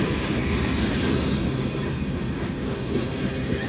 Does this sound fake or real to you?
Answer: real